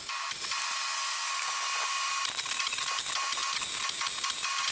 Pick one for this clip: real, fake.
real